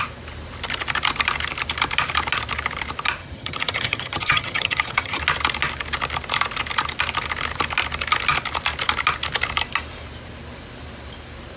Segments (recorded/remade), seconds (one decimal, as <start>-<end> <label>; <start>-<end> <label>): 0.0-3.2 recorded; 3.2-5.2 remade; 5.2-11.6 recorded